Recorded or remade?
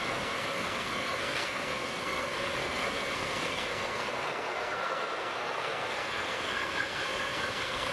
remade